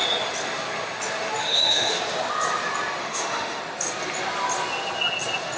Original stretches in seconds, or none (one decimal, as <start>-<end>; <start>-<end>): 0.0-1.4; 2.0-3.0; 3.6-5.6